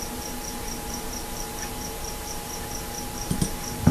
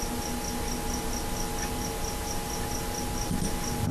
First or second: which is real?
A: second